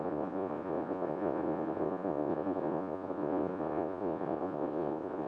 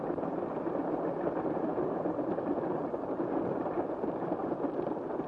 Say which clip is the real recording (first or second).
second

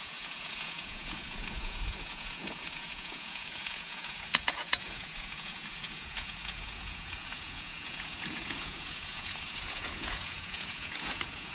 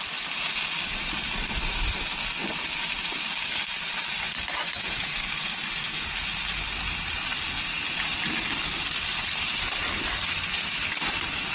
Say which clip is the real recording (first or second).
second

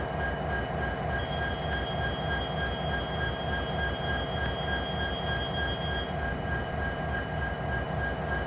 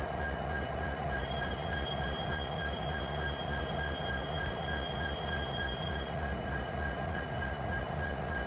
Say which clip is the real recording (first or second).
first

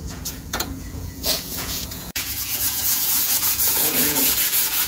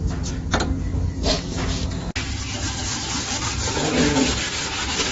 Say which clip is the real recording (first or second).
second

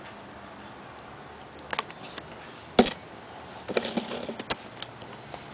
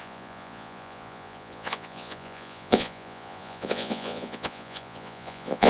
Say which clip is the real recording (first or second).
first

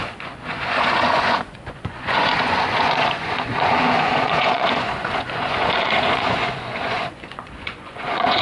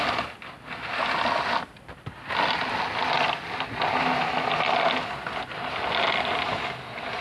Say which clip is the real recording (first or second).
second